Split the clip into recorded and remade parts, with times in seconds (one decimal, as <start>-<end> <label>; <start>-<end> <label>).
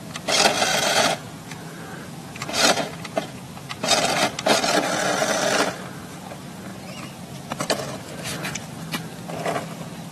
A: 0.0-0.7 recorded; 0.7-3.4 remade; 3.4-10.1 recorded